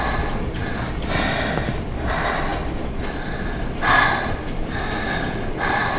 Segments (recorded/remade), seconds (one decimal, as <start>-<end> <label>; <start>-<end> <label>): 0.0-6.0 recorded